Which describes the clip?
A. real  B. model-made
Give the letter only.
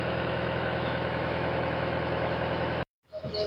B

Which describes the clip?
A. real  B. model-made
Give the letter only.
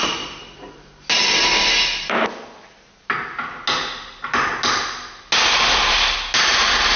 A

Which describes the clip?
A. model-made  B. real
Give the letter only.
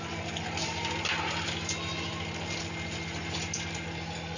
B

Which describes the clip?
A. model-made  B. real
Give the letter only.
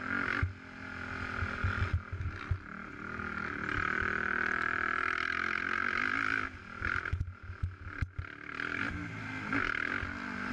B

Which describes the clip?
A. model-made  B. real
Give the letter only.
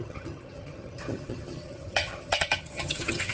A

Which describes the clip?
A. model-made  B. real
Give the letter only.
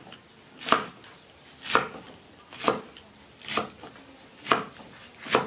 B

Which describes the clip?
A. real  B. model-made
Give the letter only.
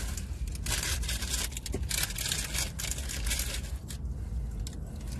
A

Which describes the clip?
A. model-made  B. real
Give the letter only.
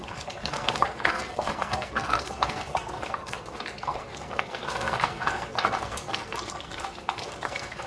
A